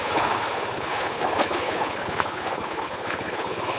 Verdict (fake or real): fake